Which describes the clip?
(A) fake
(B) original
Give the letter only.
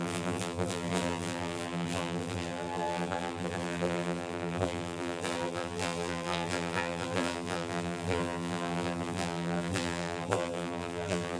A